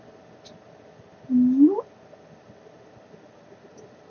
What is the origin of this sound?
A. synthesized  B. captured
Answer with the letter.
B